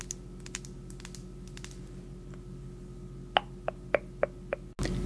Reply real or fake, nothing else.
real